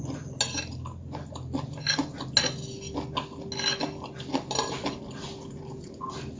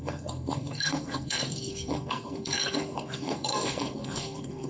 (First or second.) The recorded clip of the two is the first